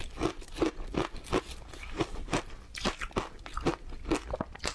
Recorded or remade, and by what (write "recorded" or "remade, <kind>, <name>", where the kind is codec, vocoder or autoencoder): recorded